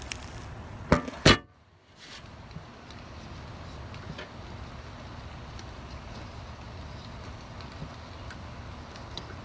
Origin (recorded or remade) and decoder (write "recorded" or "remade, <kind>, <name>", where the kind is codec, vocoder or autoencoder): recorded